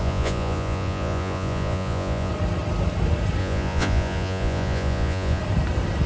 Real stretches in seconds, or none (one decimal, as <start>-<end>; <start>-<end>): 2.3-3.4; 5.4-6.1